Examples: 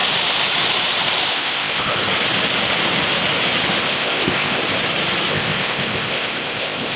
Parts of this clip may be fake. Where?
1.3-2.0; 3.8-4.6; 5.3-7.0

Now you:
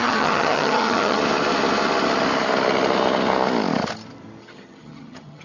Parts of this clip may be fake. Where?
0.0-1.2; 4.4-5.4

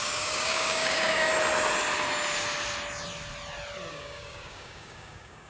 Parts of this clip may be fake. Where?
0.0-1.3; 3.9-5.5

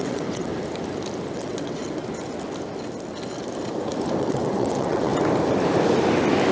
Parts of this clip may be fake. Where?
0.0-0.5; 1.3-1.8; 4.2-5.1

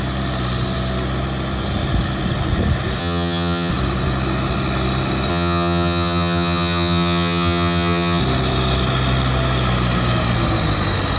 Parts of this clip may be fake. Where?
3.0-3.7; 5.3-8.2